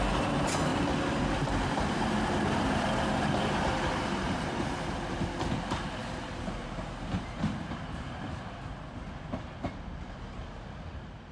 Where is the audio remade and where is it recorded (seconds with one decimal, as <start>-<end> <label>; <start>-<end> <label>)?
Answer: 0.0-11.3 remade